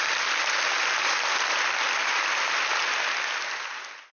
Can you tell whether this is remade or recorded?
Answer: recorded